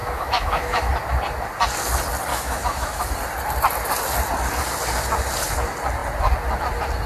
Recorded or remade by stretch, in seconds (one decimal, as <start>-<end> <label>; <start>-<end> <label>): 0.0-0.9 remade; 0.9-2.3 recorded; 2.3-3.1 remade; 3.1-7.1 recorded